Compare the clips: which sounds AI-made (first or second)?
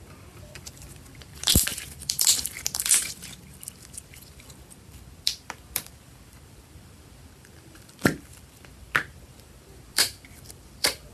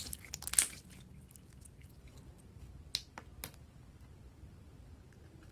first